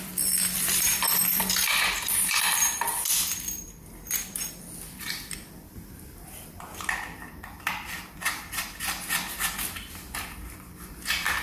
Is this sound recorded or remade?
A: remade